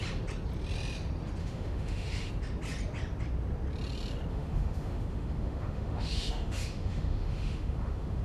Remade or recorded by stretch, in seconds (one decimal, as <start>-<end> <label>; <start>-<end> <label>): 0.0-1.4 recorded; 1.4-2.3 remade; 2.3-4.3 recorded; 4.3-8.2 remade